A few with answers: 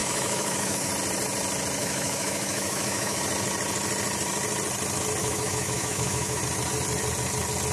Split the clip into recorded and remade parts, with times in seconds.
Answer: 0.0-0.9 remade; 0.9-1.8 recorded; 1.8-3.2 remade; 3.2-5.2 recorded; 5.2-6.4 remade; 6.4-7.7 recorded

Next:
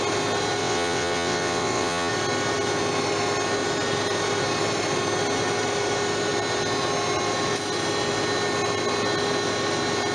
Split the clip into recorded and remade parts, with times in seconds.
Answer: 0.0-0.6 recorded; 0.6-2.1 remade; 2.1-10.1 recorded

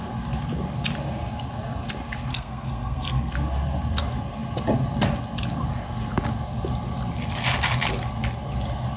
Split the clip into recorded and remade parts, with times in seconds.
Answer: 0.0-2.3 recorded; 2.3-3.3 remade; 3.3-9.0 recorded

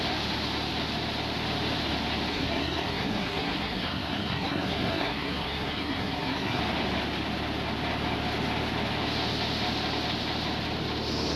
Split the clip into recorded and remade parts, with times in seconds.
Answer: 0.0-2.3 recorded; 2.3-6.6 remade; 6.6-11.4 recorded